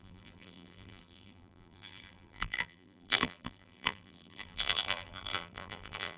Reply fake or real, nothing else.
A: fake